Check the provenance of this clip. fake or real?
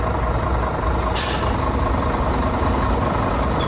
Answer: real